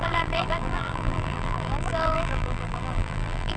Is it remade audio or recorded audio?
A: remade